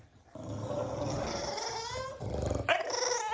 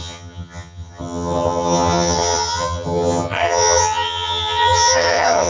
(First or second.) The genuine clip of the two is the first